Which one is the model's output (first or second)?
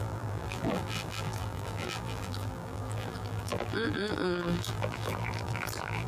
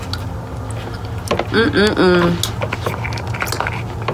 first